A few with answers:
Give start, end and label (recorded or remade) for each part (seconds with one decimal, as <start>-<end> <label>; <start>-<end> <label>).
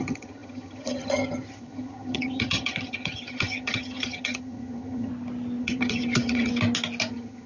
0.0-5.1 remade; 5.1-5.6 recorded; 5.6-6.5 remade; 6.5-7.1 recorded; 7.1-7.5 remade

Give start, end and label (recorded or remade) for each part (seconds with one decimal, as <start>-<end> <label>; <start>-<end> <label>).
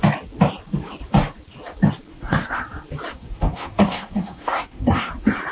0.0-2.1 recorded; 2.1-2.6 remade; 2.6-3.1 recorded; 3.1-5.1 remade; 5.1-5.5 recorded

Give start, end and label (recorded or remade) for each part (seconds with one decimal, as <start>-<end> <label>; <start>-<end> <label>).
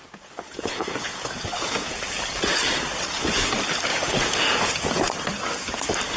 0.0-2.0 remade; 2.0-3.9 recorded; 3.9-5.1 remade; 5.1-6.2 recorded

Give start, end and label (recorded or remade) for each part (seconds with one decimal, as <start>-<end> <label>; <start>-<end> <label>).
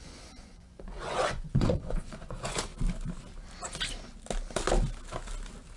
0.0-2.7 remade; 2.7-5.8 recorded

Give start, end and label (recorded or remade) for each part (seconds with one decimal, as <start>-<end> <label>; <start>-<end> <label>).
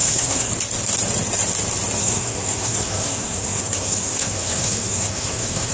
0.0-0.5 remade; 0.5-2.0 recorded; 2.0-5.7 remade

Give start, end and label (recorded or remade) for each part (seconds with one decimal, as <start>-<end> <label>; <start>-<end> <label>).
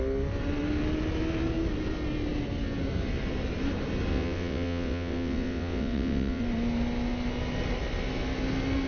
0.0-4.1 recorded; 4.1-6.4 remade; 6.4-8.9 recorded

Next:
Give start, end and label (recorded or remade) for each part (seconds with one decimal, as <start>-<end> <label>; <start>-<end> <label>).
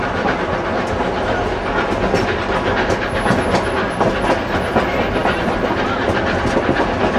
0.0-7.2 recorded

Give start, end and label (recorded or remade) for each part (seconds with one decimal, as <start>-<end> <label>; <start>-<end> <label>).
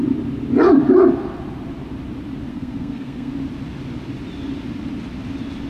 0.0-2.5 recorded; 2.5-3.3 remade; 3.3-5.7 recorded